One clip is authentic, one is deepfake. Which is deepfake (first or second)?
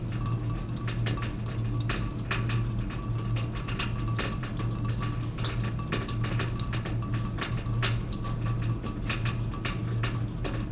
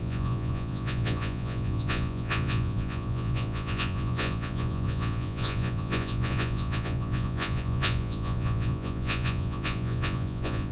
second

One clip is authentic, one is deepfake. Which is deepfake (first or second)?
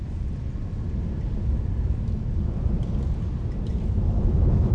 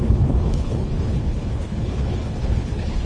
second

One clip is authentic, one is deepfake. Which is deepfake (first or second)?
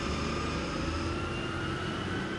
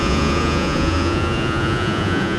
second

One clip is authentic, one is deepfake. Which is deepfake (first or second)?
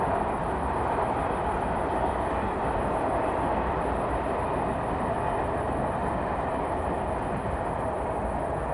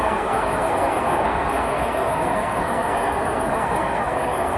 second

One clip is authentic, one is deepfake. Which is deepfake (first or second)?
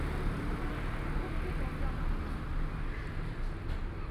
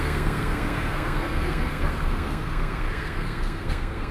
second